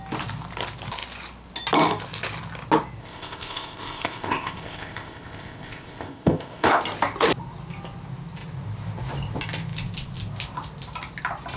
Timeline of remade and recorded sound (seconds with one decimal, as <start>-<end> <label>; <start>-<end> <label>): 0.0-3.0 recorded; 3.0-6.8 remade; 6.8-11.6 recorded